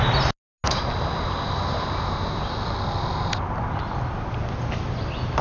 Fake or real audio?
real